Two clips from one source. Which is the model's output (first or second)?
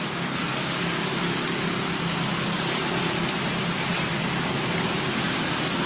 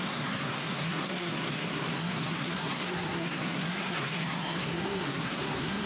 second